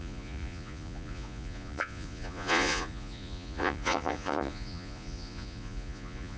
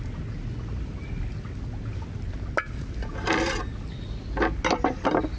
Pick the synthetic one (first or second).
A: first